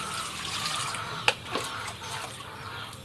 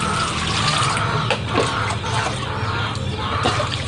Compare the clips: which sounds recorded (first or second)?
second